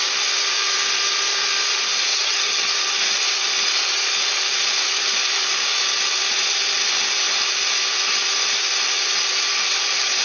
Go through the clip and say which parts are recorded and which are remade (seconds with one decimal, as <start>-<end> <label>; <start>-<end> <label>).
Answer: 0.0-2.1 recorded; 2.1-2.7 remade; 2.7-10.2 recorded